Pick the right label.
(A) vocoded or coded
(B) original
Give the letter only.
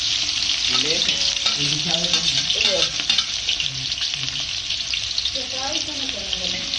B